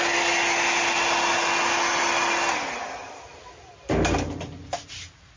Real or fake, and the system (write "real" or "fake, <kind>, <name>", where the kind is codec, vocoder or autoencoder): real